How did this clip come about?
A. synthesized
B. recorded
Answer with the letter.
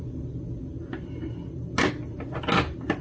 B